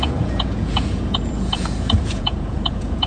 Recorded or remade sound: remade